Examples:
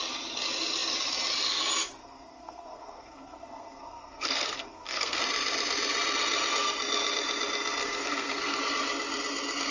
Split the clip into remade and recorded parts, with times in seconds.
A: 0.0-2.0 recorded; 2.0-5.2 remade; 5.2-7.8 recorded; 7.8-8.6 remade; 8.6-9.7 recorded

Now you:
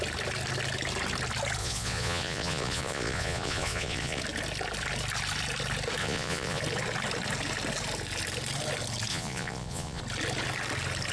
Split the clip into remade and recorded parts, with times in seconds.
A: 0.0-1.6 recorded; 1.6-4.2 remade; 4.2-6.0 recorded; 6.0-6.6 remade; 6.6-9.1 recorded; 9.1-10.0 remade; 10.0-11.1 recorded

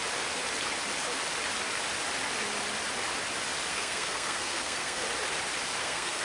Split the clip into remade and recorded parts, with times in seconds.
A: 0.0-3.7 recorded; 3.7-5.0 remade; 5.0-5.8 recorded; 5.8-6.2 remade

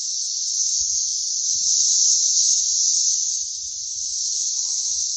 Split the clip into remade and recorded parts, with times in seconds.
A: 0.0-5.2 recorded

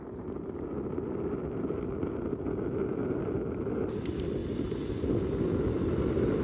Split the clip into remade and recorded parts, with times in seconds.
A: 0.0-6.4 recorded